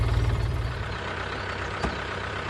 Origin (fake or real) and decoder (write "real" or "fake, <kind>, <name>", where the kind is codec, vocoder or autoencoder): fake, vocoder, BigVGAN v2